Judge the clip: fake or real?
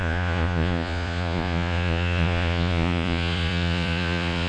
fake